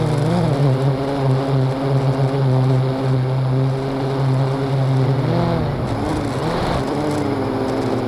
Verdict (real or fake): real